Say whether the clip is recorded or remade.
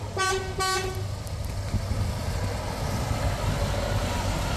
recorded